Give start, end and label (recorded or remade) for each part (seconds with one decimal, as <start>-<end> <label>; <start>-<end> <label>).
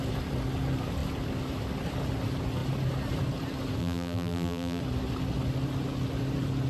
0.0-3.8 recorded; 3.8-4.8 remade; 4.8-6.7 recorded